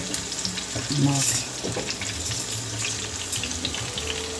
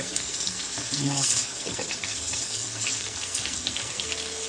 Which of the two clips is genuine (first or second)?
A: first